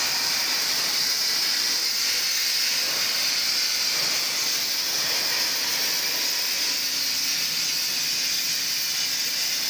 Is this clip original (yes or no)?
yes